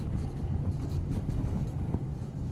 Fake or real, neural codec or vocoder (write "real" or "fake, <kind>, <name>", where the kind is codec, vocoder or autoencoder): fake, codec, DAC